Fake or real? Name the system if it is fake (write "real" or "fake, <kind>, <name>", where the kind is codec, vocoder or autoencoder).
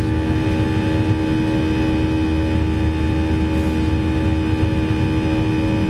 real